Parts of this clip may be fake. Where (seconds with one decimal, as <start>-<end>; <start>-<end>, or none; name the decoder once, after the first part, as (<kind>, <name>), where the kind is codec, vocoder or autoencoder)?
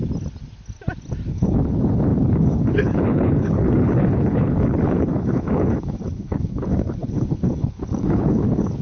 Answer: 1.3-8.8 (codec, HILCodec)